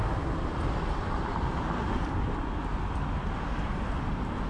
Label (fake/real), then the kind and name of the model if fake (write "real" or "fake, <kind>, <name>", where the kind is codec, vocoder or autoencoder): real